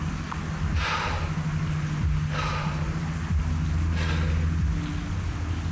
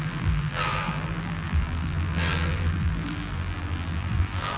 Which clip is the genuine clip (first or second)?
first